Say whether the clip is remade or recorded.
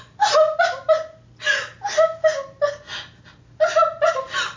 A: recorded